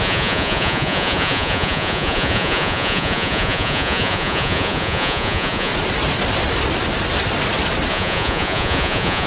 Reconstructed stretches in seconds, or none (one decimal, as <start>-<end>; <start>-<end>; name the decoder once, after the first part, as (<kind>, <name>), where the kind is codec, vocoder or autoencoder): 0.0-5.7 (vocoder, Vocos); 7.9-9.3